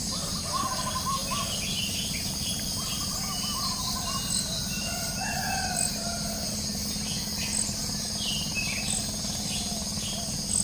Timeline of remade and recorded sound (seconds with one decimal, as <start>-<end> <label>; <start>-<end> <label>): 0.0-10.6 recorded